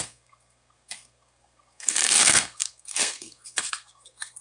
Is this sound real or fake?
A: fake